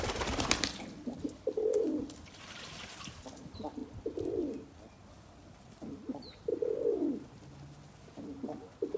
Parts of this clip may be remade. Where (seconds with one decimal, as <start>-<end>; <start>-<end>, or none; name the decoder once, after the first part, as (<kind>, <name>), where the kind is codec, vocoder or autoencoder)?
0.0-6.5 (vocoder, BigVGAN v2)